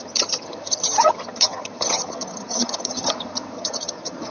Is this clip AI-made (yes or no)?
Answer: yes